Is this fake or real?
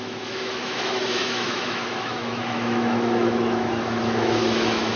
fake